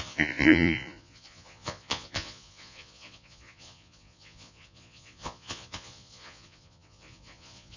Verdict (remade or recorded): remade